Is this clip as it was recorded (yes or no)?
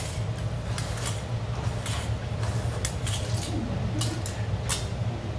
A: yes